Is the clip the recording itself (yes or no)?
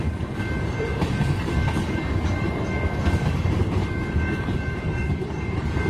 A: no